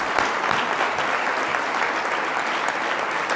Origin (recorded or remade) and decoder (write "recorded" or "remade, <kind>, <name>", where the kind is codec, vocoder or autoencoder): recorded